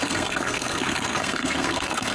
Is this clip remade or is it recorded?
remade